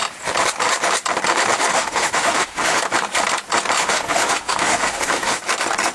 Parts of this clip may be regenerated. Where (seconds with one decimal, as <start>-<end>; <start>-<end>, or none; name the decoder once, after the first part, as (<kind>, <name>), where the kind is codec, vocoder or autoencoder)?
1.7-2.8 (autoencoder, DAC-VAE); 3.8-5.4